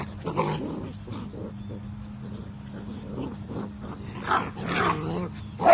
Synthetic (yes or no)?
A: no